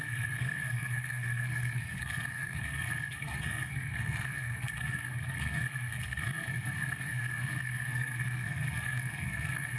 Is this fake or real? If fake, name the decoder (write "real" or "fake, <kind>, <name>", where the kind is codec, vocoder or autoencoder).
fake, codec, SNAC